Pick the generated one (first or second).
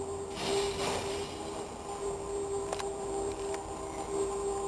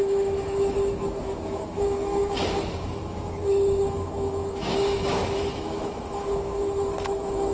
second